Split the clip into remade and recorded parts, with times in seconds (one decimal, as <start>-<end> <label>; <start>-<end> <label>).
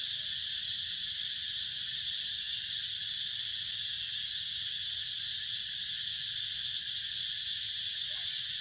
0.0-8.6 recorded